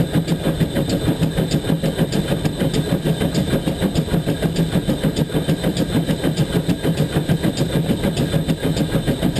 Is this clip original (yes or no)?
yes